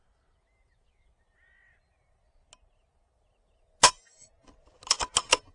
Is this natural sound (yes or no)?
yes